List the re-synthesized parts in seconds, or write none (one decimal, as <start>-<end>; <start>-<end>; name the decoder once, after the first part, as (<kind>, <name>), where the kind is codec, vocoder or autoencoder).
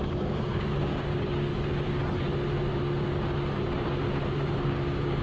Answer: 0.0-1.5 (codec, DAC); 4.6-5.2